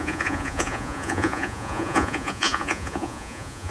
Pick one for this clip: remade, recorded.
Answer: remade